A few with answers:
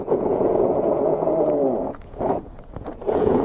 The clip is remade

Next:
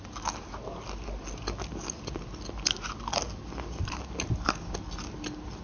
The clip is recorded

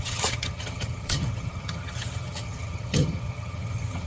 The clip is remade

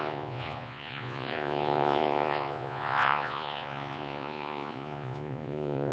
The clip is remade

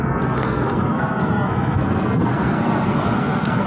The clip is remade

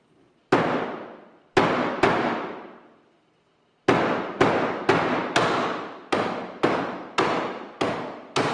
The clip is recorded